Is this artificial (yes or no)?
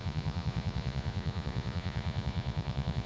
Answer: yes